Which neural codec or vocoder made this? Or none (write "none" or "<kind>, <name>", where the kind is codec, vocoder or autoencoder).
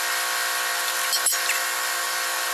none